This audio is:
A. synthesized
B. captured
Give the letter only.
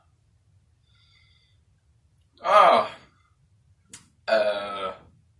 B